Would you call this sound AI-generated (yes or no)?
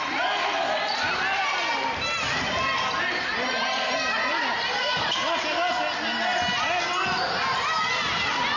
no